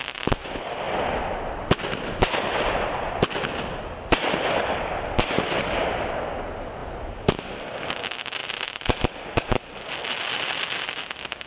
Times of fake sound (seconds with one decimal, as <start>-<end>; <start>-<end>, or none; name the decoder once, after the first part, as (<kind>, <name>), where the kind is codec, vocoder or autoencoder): none